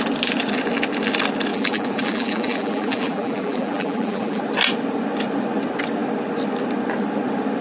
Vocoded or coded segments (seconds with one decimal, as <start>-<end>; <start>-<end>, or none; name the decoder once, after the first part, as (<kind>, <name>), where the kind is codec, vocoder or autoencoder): 1.5-4.4 (vocoder, BigVGAN v2)